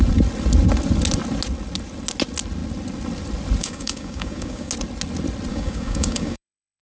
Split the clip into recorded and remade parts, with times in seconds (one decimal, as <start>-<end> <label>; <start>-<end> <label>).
0.0-3.6 recorded; 3.6-4.7 remade; 4.7-5.5 recorded; 5.5-6.8 remade